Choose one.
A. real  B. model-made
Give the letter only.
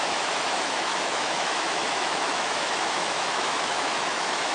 B